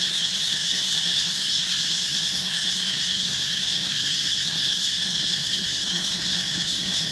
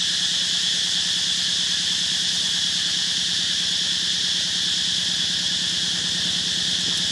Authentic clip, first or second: second